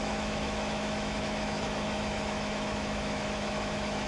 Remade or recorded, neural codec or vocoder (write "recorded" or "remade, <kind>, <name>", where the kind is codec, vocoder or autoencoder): remade, autoencoder, DAC-VAE